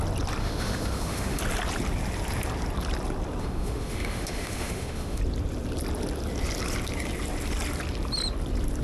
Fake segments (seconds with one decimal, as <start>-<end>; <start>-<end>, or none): 0.4-1.4; 3.4-5.2